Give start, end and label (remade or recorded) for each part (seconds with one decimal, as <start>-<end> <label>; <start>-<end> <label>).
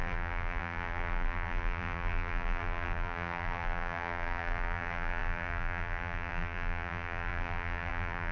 0.0-8.3 remade